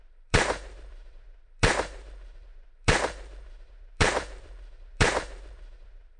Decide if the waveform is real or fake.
fake